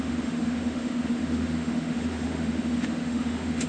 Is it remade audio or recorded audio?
remade